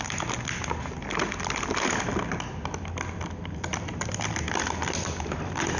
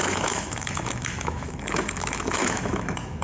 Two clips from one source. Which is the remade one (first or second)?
second